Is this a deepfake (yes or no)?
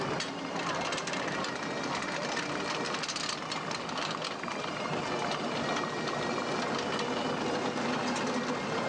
no